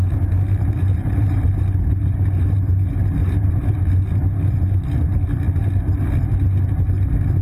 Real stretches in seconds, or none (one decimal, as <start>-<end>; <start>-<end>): 0.0-0.9; 1.6-3.2; 3.8-7.4